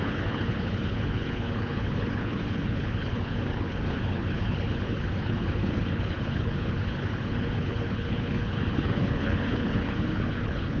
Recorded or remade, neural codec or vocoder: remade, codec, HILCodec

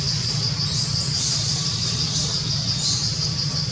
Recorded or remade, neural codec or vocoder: recorded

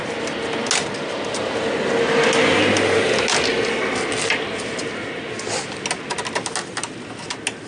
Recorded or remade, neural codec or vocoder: recorded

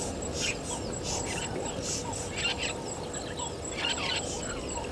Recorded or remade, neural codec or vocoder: recorded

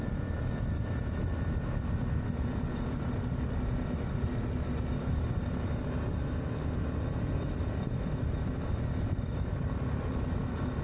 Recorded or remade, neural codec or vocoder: recorded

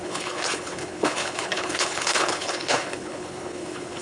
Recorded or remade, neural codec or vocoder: remade, codec, HILCodec